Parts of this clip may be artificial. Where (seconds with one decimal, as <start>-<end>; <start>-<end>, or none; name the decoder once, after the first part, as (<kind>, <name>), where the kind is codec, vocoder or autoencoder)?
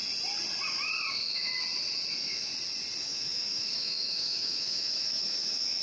1.1-1.5 (autoencoder, DAC-VAE); 2.1-2.5; 3.0-5.8